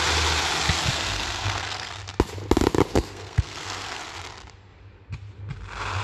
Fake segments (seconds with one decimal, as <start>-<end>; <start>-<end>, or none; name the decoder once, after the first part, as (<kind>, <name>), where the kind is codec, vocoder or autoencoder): 0.9-1.9 (codec, SNAC); 2.9-4.0